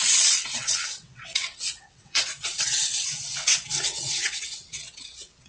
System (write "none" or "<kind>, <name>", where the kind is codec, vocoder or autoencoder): vocoder, WaveNeXt